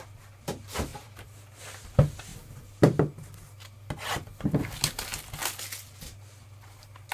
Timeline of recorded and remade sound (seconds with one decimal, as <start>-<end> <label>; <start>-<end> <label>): 0.0-0.9 recorded; 0.9-1.4 remade; 1.4-7.1 recorded